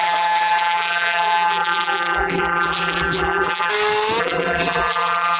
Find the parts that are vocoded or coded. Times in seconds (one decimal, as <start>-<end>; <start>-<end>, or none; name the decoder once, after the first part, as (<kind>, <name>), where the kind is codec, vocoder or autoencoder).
0.0-3.7 (vocoder, BigVGAN v2); 4.2-5.4